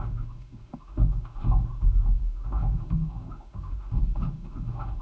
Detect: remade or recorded remade